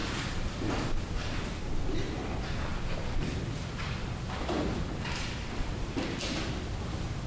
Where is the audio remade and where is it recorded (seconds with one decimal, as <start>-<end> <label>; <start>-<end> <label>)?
0.0-1.6 remade; 1.6-2.7 recorded; 2.7-6.8 remade; 6.8-7.3 recorded